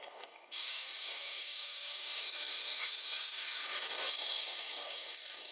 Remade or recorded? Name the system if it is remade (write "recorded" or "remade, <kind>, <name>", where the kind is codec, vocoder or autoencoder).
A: remade, codec, DAC